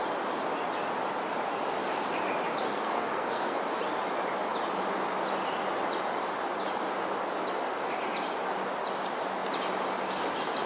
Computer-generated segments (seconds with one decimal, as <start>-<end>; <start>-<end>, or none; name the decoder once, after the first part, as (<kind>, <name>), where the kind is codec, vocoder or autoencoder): 2.7-3.6 (codec, SNAC)